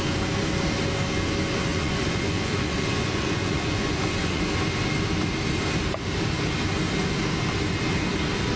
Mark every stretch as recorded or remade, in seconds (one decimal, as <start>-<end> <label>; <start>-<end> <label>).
0.0-1.7 recorded; 1.7-4.5 remade; 4.5-8.6 recorded